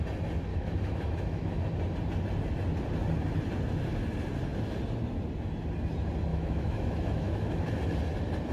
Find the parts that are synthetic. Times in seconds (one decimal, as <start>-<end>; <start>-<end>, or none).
0.5-1.6; 6.3-7.7

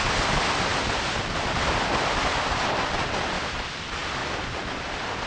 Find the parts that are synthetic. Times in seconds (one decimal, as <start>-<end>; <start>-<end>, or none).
none